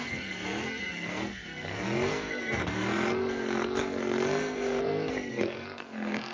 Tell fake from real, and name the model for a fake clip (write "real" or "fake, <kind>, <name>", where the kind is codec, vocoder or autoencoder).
fake, codec, SNAC